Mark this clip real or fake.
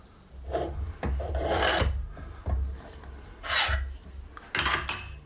real